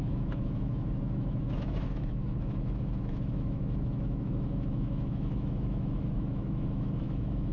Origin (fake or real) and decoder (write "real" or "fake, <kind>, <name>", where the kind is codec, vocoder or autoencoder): fake, autoencoder, DAC-VAE